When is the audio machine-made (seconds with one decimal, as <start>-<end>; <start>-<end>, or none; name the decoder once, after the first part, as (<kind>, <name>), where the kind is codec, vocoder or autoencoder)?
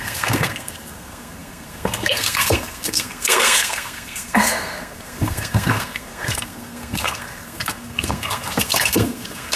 0.0-9.6 (codec, SNAC)